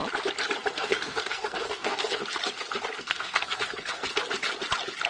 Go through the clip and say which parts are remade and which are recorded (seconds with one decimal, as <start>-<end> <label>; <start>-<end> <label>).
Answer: 0.0-0.7 recorded; 0.7-2.2 remade; 2.2-3.0 recorded; 3.0-4.1 remade; 4.1-5.1 recorded